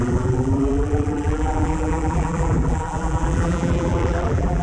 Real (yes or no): no